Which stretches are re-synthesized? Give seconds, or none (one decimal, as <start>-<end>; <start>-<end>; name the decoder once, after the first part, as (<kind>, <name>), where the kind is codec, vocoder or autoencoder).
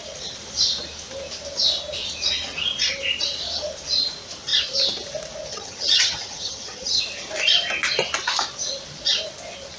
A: 5.5-7.0 (vocoder, HiFi-GAN)